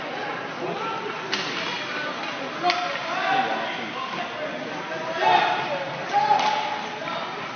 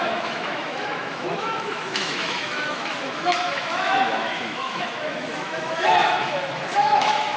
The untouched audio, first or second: first